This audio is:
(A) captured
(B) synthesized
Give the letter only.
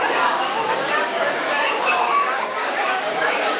B